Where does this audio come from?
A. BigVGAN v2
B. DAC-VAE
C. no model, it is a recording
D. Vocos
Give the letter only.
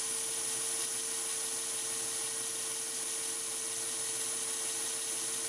C